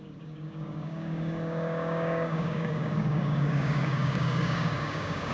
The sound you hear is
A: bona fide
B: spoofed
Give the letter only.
B